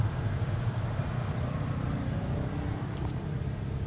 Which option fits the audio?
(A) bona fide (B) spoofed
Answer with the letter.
B